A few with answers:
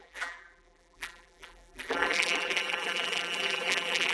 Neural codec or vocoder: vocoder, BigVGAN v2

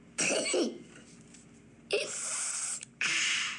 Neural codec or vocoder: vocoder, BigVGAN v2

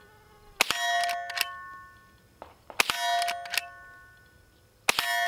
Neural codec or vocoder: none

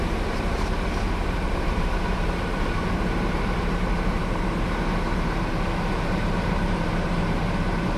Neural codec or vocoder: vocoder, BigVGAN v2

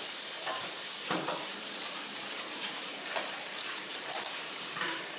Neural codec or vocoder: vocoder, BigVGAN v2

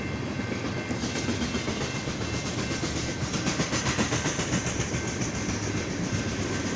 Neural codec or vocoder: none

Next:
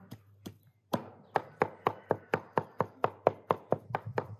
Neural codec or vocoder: none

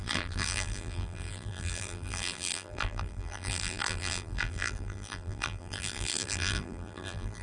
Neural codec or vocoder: vocoder, BigVGAN v2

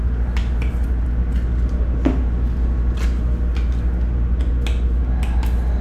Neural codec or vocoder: none